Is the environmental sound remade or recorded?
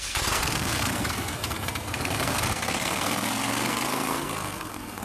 remade